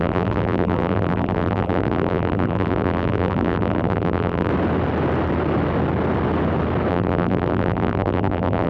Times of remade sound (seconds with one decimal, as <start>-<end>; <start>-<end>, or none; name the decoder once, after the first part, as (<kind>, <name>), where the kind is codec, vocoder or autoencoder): 0.0-4.5 (vocoder, BigVGAN v2); 6.9-8.7